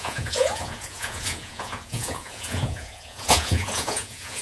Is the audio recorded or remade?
remade